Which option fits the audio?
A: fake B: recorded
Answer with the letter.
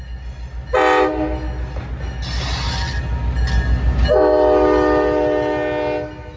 B